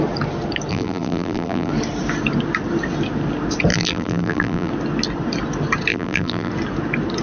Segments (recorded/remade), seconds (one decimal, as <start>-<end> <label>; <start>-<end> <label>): 0.0-0.7 recorded; 0.7-1.7 remade; 1.7-3.7 recorded; 3.7-4.7 remade; 4.7-5.9 recorded; 5.9-6.5 remade; 6.5-7.2 recorded